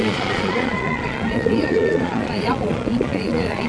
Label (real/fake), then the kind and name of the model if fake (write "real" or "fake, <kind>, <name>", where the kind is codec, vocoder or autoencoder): fake, vocoder, Vocos